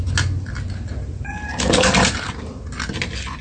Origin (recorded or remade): recorded